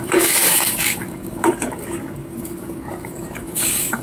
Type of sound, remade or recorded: remade